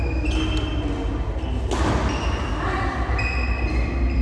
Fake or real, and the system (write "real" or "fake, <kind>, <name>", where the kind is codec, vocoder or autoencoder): real